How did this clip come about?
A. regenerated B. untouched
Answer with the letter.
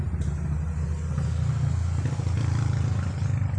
B